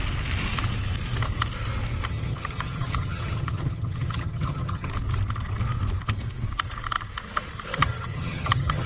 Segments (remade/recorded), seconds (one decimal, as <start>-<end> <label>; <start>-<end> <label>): 0.0-2.1 recorded; 2.1-4.9 remade; 4.9-7.8 recorded; 7.8-8.9 remade